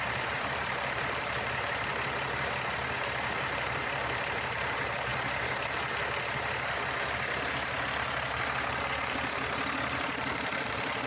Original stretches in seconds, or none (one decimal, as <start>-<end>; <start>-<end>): 1.9-2.9; 5.1-8.4